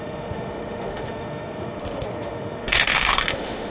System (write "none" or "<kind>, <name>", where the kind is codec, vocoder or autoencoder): autoencoder, DAC-VAE